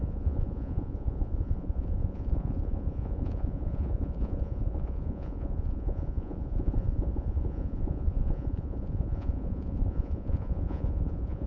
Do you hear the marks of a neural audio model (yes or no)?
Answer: yes